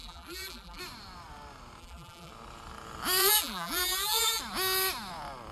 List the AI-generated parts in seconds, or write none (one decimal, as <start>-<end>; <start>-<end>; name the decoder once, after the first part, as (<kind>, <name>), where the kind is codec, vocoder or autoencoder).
0.0-0.8 (vocoder, BigVGAN v2); 1.8-2.3; 3.2-4.4